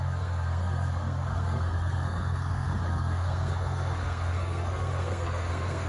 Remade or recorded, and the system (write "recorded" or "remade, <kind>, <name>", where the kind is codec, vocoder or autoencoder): remade, codec, SNAC